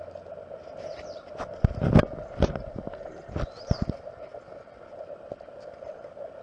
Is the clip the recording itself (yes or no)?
yes